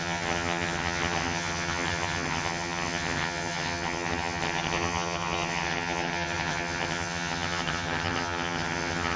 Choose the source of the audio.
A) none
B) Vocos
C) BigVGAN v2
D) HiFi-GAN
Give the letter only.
D